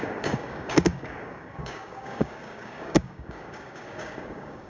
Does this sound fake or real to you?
fake